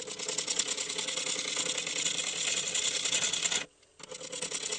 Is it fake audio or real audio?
real